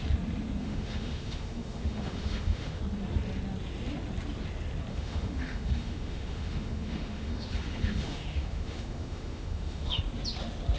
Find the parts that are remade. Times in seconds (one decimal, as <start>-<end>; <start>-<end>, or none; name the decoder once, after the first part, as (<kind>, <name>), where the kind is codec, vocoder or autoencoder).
0.6-2.8 (autoencoder, DAC-VAE); 4.9-10.0